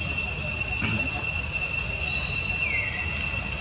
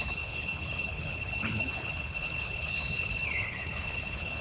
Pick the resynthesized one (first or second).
second